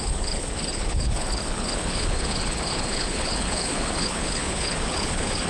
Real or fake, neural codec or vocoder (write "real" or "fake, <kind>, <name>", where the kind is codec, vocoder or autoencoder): fake, codec, HILCodec